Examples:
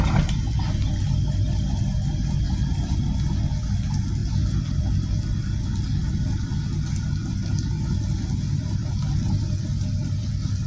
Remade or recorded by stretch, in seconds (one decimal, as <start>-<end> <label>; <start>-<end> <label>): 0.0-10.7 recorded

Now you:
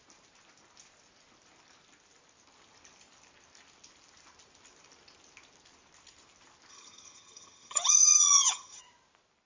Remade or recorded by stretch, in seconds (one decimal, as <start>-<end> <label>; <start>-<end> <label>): 0.0-6.7 recorded; 6.7-8.8 remade; 8.8-9.5 recorded

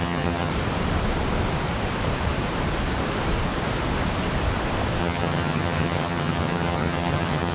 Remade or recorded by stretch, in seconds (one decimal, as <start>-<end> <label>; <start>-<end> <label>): 0.0-0.5 remade; 0.5-5.0 recorded; 5.0-7.5 remade

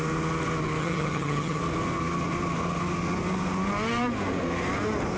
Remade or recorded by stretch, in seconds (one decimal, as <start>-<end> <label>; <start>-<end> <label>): 0.0-0.8 recorded; 0.8-1.6 remade; 1.6-5.2 recorded

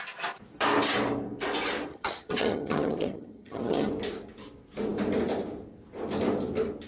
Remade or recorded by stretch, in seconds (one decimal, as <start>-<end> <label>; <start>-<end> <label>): 0.0-1.9 recorded; 1.9-3.9 remade; 3.9-6.9 recorded

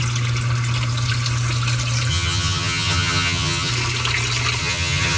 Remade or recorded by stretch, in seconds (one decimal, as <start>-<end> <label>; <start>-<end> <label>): 0.0-2.1 recorded; 2.1-3.7 remade; 3.7-4.6 recorded; 4.6-5.2 remade

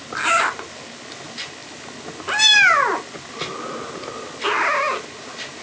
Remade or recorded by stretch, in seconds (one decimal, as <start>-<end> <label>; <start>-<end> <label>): 0.0-5.6 recorded